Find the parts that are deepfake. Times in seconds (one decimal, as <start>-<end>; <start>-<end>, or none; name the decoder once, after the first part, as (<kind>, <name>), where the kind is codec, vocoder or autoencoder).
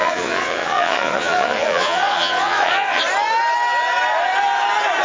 0.0-3.0 (vocoder, Vocos)